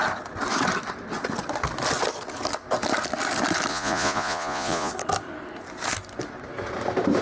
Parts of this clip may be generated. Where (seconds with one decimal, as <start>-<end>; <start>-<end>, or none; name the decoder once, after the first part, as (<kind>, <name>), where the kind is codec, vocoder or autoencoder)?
3.7-4.9 (vocoder, Vocos)